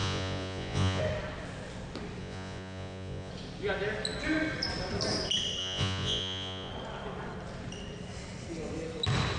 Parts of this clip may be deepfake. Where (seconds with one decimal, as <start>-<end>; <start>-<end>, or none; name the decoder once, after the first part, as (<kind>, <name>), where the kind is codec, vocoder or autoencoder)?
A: 0.0-1.0 (vocoder, Vocos); 2.2-3.3; 5.6-6.7